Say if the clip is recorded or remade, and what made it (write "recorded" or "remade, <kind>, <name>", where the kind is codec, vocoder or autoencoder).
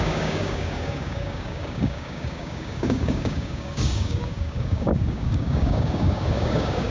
remade, codec, DAC